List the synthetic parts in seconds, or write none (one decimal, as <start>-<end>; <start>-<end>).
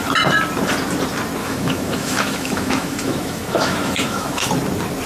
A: 1.4-4.5